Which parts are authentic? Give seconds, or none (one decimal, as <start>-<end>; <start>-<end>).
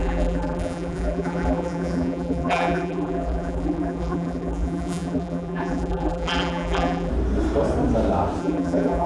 7.1-8.4